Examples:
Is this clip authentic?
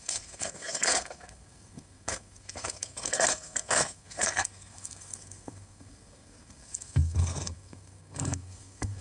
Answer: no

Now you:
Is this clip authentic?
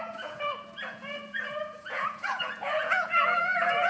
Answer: no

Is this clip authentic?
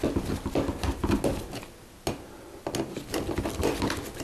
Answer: yes